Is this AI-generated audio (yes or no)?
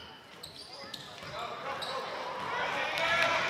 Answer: no